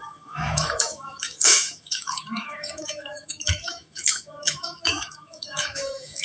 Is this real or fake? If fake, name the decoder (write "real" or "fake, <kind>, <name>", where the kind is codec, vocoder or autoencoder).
fake, autoencoder, DAC-VAE